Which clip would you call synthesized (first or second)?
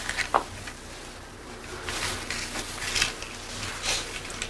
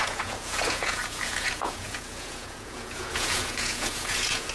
second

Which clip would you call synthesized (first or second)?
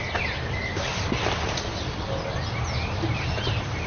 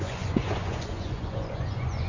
second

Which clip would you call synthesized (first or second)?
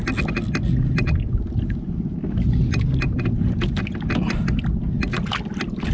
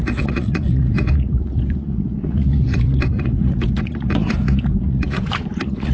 second